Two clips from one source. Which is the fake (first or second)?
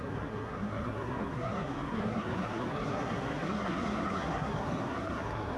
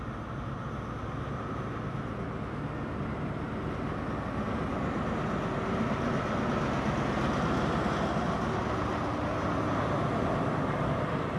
first